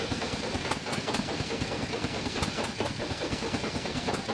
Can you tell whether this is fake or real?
fake